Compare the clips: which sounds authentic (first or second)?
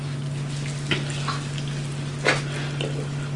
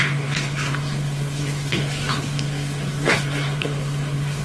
first